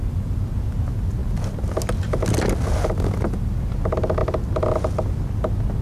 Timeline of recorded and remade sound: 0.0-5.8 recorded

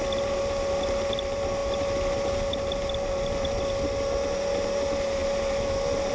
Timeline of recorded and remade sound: 0.0-6.1 recorded

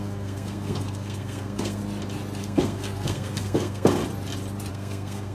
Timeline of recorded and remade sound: 0.0-1.8 remade; 1.8-2.4 recorded; 2.4-4.0 remade; 4.0-4.7 recorded; 4.7-5.3 remade

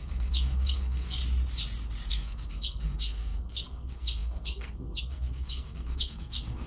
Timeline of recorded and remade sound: 0.0-1.2 remade; 1.2-2.1 recorded; 2.1-6.7 remade

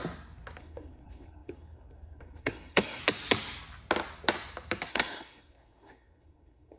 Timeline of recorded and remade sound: 0.0-0.6 recorded; 0.6-3.0 remade; 3.0-4.9 recorded; 4.9-6.8 remade